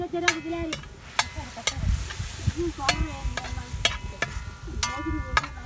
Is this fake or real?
real